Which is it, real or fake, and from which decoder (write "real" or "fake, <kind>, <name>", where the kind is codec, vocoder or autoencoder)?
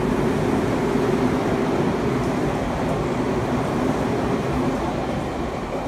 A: real